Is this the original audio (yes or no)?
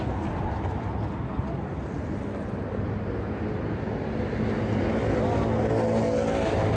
yes